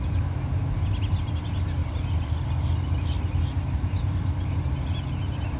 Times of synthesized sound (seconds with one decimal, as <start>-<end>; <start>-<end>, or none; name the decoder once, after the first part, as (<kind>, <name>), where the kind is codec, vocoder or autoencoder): none